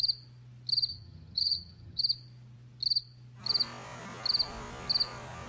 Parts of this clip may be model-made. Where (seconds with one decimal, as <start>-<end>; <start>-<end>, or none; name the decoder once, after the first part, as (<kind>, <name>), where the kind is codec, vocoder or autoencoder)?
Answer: 0.9-2.0 (vocoder, HiFi-GAN)

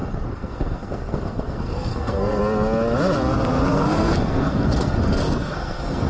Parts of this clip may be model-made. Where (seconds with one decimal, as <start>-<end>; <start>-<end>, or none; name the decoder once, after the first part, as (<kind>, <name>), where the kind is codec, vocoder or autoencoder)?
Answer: 0.0-2.4 (codec, SNAC); 3.7-6.1

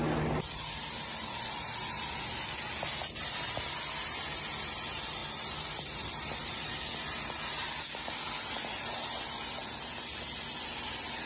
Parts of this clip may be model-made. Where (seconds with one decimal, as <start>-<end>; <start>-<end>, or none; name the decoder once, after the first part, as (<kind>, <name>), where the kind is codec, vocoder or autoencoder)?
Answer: 5.2-6.8 (vocoder, BigVGAN v2)

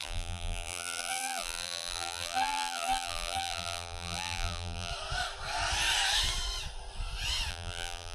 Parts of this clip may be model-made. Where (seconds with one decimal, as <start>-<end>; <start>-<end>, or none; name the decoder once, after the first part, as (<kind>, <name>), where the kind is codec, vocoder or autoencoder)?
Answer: 0.0-4.9 (vocoder, BigVGAN v2); 7.5-8.1

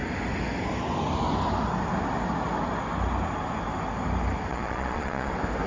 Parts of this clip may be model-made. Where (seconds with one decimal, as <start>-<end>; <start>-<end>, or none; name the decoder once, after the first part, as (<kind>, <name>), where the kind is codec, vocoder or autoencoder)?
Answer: 4.5-5.3 (vocoder, Vocos)

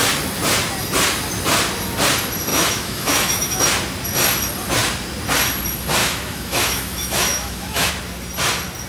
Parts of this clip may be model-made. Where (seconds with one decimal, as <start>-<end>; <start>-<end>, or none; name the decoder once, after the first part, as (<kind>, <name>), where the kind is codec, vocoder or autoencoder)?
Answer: 2.5-3.6 (autoencoder, DAC-VAE); 6.0-7.9

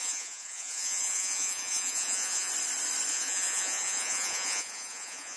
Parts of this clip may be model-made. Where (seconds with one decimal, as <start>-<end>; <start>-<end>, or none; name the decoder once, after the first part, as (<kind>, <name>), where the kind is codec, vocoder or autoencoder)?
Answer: 0.0-2.5 (vocoder, Vocos); 3.1-5.4

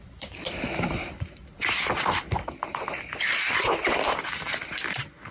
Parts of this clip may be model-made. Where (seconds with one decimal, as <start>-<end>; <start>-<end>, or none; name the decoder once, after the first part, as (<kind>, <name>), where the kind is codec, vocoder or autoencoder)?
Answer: 0.0-5.3 (vocoder, BigVGAN v2)